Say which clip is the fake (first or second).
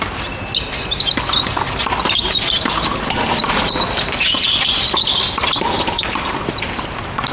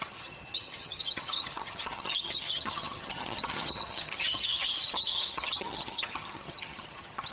second